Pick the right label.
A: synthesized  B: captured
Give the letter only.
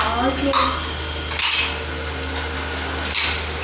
B